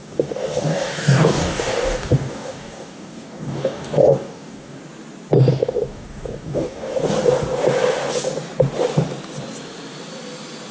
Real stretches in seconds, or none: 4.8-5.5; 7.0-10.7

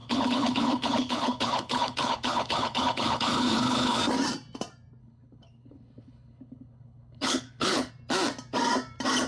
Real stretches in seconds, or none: 4.0-5.0; 7.9-9.3

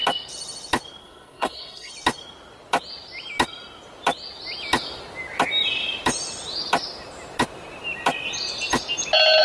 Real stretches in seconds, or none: 0.0-1.0; 1.9-9.4

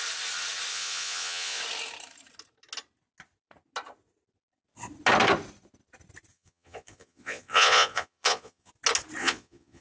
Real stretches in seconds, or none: 0.0-0.7; 1.6-6.3; 8.7-9.2